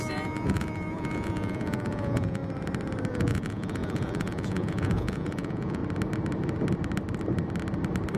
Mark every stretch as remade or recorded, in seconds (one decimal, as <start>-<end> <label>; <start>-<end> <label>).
0.0-2.4 remade; 2.4-3.1 recorded; 3.1-5.8 remade; 5.8-8.2 recorded